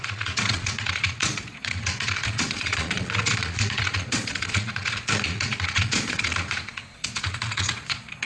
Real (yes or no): no